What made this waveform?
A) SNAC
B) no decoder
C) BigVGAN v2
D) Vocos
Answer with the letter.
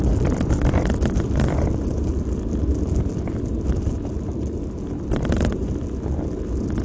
B